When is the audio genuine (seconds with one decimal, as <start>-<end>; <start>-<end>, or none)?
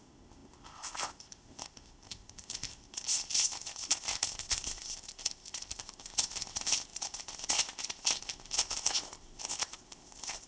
none